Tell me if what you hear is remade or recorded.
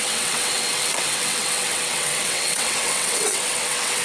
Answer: remade